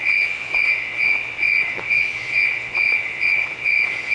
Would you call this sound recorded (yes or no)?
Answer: no